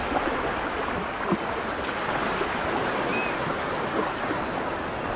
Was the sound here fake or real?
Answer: real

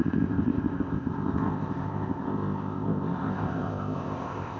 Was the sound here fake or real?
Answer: fake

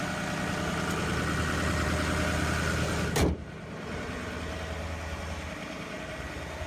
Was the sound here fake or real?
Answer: real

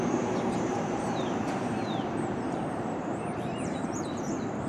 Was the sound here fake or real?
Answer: fake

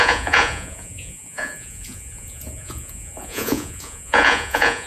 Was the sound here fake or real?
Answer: fake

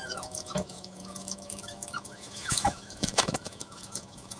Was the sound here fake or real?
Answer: fake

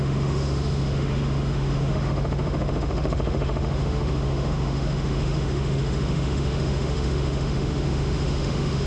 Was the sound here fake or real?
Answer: fake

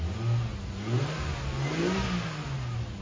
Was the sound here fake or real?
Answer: real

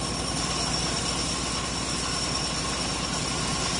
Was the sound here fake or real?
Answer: real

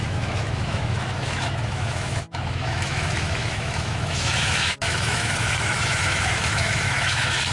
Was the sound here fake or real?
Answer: fake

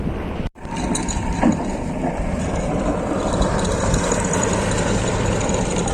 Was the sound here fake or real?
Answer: fake